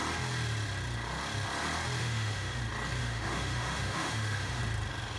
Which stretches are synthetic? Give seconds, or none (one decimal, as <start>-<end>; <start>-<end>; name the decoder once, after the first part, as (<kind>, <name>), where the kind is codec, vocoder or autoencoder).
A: 2.0-2.6 (autoencoder, DAC-VAE); 3.0-4.6